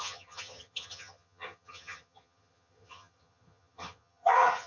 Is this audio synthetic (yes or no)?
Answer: yes